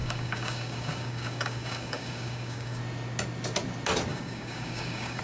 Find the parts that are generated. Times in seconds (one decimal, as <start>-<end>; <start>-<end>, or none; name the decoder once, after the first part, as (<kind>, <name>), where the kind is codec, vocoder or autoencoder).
0.0-2.8 (codec, DAC); 4.1-5.2